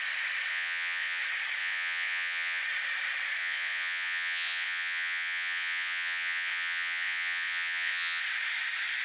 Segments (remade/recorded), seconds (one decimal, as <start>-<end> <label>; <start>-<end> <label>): 0.0-0.5 recorded; 0.5-1.2 remade; 1.2-1.6 recorded; 1.6-2.6 remade; 2.6-3.4 recorded; 3.4-8.2 remade; 8.2-9.0 recorded